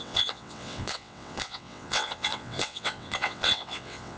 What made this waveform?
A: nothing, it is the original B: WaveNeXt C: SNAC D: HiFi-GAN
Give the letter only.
B